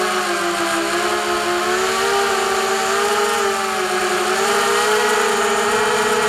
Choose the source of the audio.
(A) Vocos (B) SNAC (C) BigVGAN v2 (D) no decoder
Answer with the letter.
D